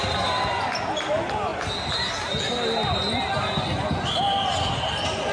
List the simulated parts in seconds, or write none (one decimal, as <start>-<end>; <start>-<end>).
none